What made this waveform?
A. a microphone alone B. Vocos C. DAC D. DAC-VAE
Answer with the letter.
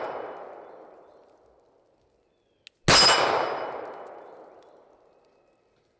A